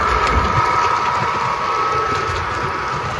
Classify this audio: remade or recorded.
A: remade